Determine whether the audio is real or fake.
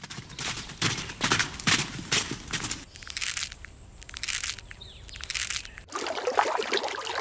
real